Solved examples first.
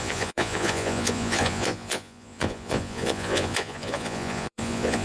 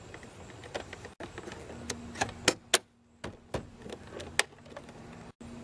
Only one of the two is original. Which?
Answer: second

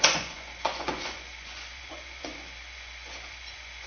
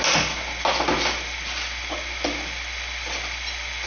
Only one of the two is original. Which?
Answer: second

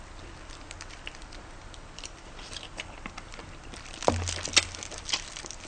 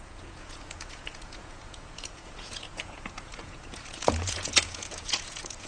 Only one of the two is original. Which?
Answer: first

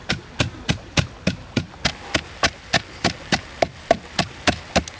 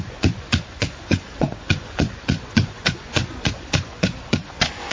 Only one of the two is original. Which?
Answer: first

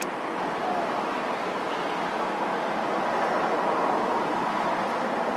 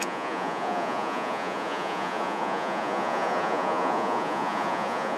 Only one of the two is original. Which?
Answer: first